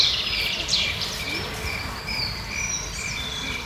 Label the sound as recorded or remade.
remade